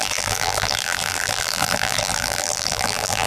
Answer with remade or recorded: remade